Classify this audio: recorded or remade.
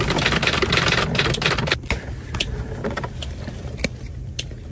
recorded